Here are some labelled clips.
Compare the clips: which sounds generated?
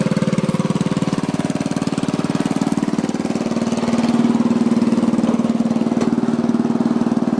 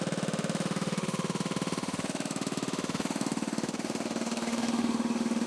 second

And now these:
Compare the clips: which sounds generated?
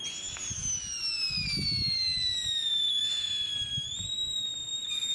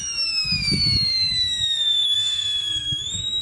second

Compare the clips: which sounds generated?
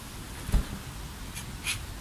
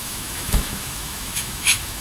second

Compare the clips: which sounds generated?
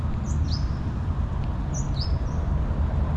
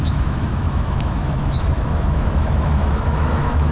second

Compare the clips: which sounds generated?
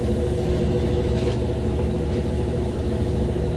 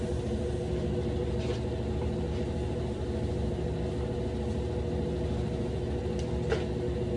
first